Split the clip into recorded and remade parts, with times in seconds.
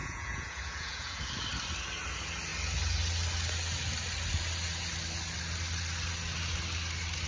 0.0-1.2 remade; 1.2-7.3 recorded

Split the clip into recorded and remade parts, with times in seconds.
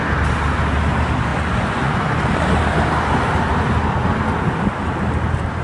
0.0-1.3 recorded; 1.3-2.2 remade; 2.2-5.6 recorded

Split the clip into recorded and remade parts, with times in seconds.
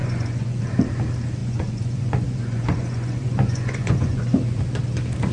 0.0-0.6 remade; 0.6-1.4 recorded; 1.4-4.6 remade; 4.6-5.3 recorded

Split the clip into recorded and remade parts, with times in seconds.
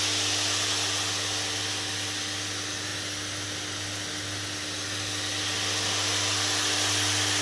0.0-7.4 recorded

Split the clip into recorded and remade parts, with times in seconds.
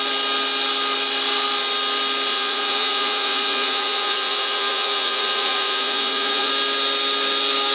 0.0-2.3 recorded; 2.3-6.5 remade; 6.5-7.7 recorded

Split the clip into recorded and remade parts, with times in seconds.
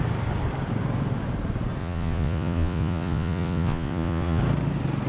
0.0-1.8 recorded; 1.8-4.4 remade; 4.4-5.1 recorded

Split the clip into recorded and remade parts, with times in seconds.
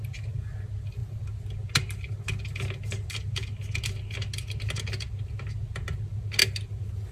0.0-7.1 recorded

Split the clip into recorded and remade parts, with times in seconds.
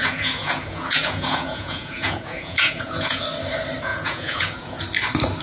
0.0-3.2 remade; 3.2-3.9 recorded; 3.9-4.8 remade; 4.8-5.4 recorded